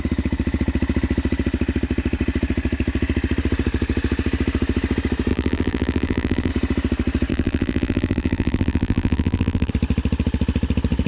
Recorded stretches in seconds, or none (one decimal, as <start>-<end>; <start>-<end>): 0.0-5.3; 6.5-7.3; 9.7-11.1